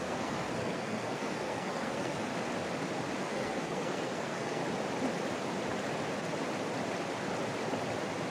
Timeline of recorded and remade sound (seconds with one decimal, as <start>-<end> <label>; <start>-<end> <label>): 0.0-2.3 remade; 2.3-3.2 recorded; 3.2-4.6 remade; 4.6-8.3 recorded